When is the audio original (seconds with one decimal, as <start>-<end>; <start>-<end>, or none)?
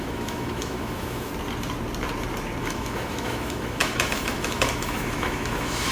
1.3-2.6